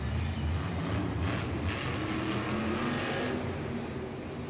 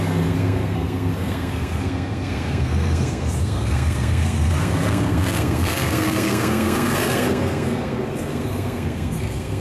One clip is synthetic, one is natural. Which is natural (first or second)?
first